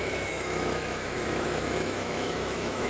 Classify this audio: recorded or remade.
remade